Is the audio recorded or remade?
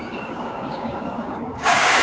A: remade